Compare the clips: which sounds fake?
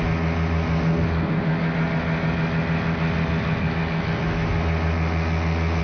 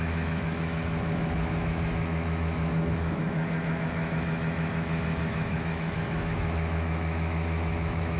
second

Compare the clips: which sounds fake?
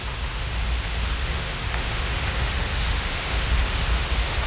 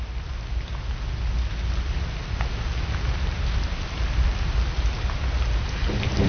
first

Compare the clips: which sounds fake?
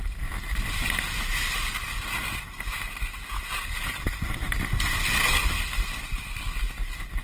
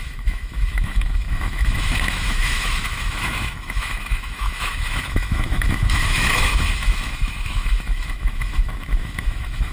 second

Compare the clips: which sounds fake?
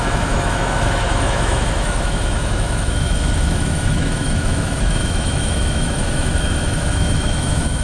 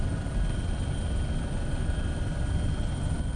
first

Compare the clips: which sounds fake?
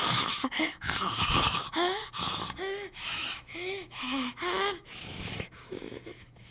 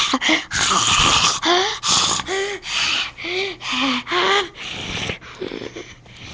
first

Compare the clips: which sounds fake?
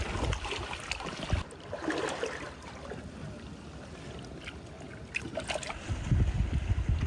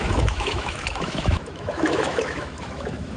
second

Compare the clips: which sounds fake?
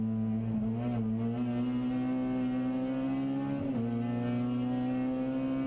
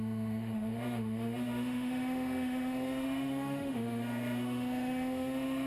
second